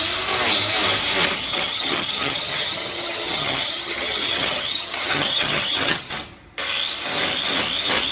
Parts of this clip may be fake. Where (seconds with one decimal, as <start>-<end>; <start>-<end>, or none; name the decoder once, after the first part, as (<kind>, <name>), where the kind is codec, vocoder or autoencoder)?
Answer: 1.5-6.1 (vocoder, HiFi-GAN)